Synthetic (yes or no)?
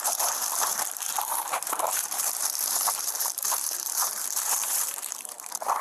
yes